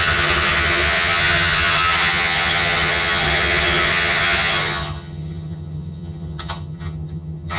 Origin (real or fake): fake